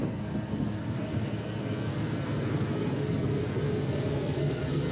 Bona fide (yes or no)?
no